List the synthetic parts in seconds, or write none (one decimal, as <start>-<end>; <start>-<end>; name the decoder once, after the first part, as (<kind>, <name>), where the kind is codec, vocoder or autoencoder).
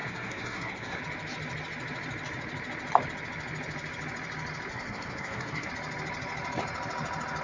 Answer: 0.0-1.0 (codec, SNAC); 4.7-5.7